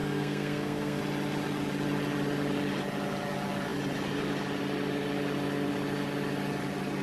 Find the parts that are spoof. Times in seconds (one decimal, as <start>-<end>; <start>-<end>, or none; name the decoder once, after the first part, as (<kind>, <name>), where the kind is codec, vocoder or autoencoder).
0.0-1.0 (codec, SNAC)

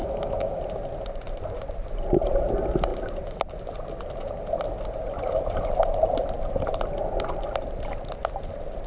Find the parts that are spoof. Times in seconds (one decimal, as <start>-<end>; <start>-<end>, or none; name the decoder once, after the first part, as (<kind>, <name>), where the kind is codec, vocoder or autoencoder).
0.0-0.6 (autoencoder, DAC-VAE)

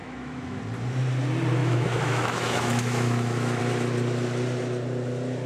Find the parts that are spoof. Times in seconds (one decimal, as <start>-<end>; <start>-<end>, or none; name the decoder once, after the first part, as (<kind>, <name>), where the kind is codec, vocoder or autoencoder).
0.0-0.6 (autoencoder, DAC-VAE); 1.6-3.6

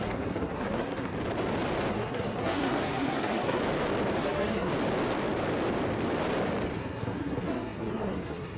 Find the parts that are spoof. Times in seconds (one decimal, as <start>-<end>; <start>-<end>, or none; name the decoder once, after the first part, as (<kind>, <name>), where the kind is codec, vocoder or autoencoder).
0.0-1.1 (codec, SNAC); 1.9-3.6; 4.2-4.7; 6.8-8.6